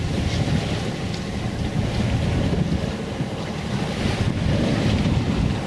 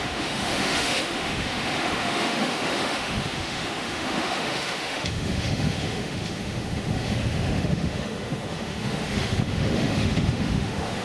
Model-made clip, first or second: second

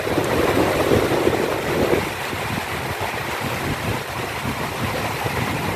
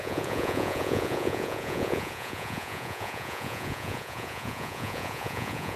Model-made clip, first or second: second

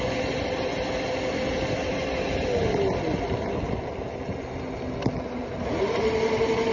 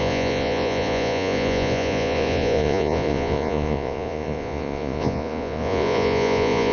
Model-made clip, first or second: second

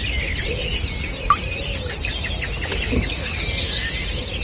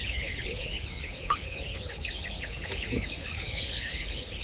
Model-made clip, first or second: second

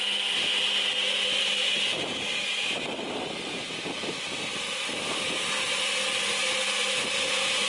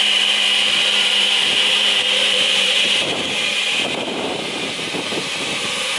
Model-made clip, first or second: second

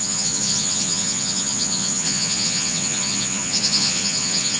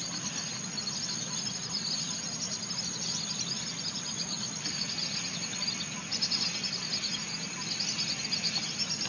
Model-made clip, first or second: first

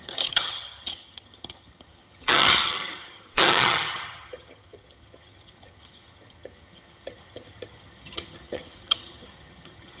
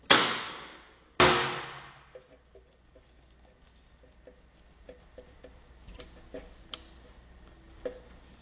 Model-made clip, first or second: first